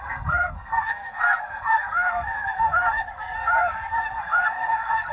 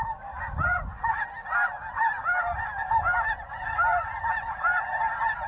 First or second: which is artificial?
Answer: first